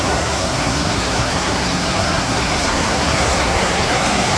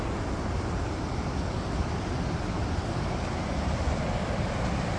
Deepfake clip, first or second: first